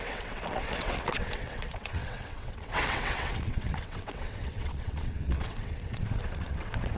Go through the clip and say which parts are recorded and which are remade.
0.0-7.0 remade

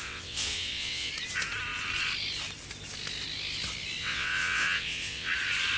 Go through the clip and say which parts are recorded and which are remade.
0.0-1.1 remade; 1.1-4.0 recorded; 4.0-5.3 remade; 5.3-5.8 recorded

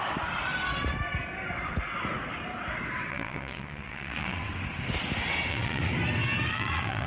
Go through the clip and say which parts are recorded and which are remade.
0.0-3.1 recorded; 3.1-4.5 remade; 4.5-5.5 recorded; 5.5-5.9 remade; 5.9-6.5 recorded; 6.5-7.1 remade

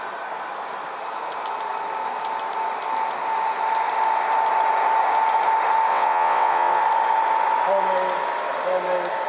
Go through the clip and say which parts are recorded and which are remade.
0.0-5.9 recorded; 5.9-6.8 remade; 6.8-9.3 recorded

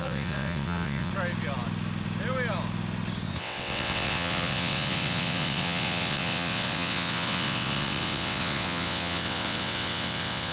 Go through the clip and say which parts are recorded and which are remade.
0.0-1.1 remade; 1.1-3.4 recorded; 3.4-10.5 remade